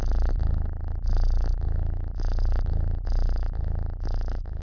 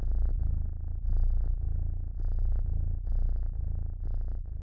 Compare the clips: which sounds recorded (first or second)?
second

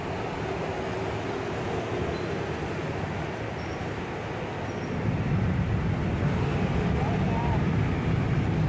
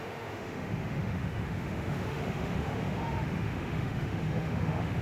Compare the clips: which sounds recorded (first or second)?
first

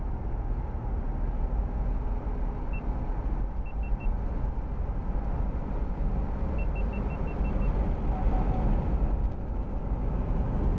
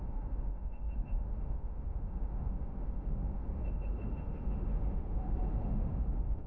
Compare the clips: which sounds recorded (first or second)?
first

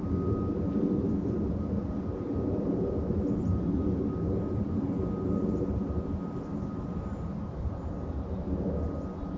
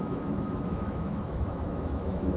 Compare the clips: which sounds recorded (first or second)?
first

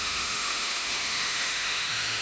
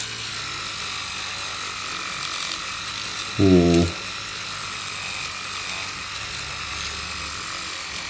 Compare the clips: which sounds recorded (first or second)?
second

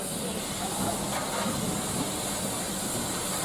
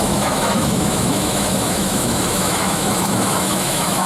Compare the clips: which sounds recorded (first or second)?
first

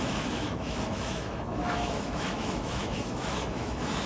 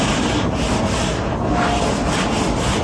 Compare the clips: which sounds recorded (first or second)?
second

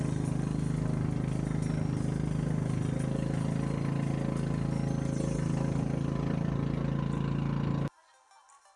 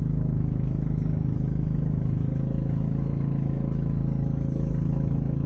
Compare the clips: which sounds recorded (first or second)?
first